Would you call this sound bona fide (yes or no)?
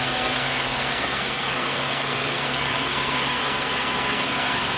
no